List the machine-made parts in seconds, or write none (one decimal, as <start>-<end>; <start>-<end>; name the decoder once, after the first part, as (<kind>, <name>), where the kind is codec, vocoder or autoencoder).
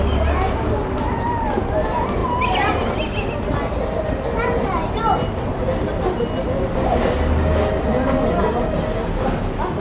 none